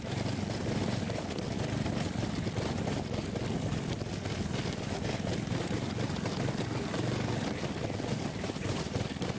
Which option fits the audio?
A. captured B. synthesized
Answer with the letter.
B